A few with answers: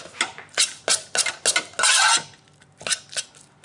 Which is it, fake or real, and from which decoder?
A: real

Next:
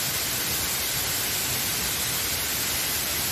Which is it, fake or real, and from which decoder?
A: real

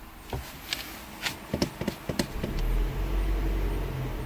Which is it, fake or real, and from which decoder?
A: real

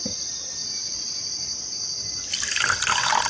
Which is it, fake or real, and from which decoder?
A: real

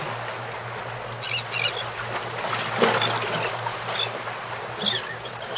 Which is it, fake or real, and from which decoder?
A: real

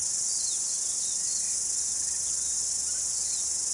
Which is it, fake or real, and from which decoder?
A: real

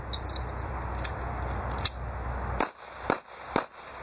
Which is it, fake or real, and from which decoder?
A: real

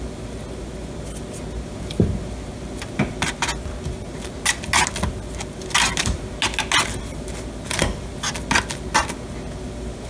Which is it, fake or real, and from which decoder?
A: real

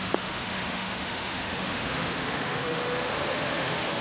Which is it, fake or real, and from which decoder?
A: fake, autoencoder, DAC-VAE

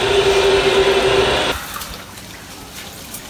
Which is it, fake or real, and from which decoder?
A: real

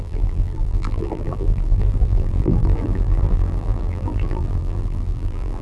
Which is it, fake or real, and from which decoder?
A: fake, vocoder, BigVGAN v2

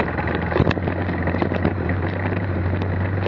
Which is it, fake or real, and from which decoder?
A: real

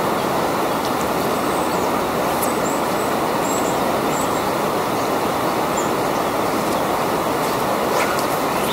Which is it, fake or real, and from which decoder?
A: real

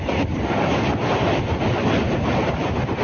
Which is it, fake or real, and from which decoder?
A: real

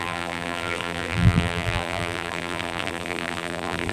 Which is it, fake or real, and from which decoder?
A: fake, vocoder, BigVGAN v2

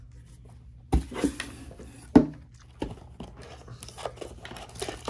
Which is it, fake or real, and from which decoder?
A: real